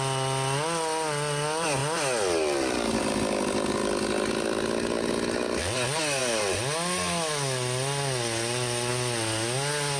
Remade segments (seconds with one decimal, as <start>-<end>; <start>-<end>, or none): none